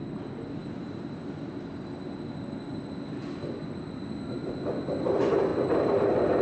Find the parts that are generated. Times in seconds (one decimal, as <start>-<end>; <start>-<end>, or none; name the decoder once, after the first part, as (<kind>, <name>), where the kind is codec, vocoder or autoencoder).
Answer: none